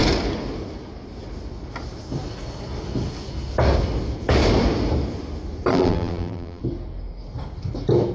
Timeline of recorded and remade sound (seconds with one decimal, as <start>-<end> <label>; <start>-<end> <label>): 0.0-5.7 recorded; 5.7-6.6 remade; 6.6-8.1 recorded

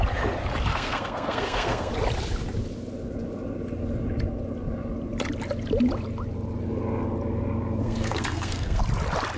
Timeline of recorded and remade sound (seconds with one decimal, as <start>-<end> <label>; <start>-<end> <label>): 0.0-0.7 recorded; 0.7-1.9 remade; 1.9-7.8 recorded; 7.8-8.8 remade; 8.8-9.4 recorded

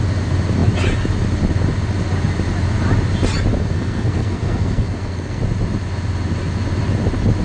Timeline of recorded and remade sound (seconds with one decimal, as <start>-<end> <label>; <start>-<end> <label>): 0.0-3.6 recorded; 3.6-5.4 remade; 5.4-7.4 recorded